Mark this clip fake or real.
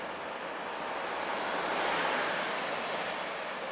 real